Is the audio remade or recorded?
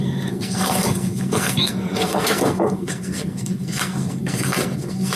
remade